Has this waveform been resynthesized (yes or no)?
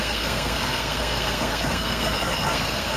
yes